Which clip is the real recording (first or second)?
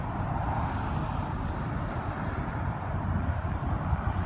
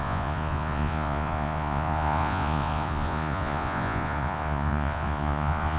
first